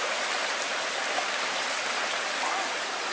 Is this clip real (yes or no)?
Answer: yes